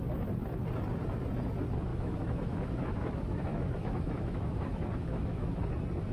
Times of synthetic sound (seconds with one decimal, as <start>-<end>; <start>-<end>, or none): 1.9-5.6